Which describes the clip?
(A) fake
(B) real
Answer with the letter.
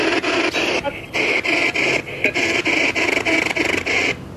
B